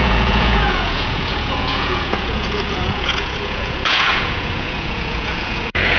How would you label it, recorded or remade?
remade